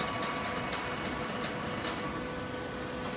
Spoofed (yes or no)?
no